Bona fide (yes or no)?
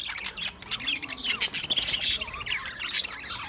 yes